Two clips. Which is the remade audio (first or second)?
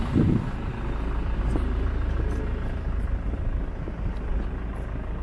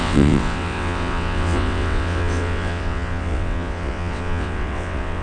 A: second